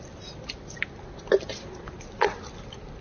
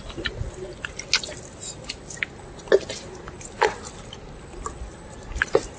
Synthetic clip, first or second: first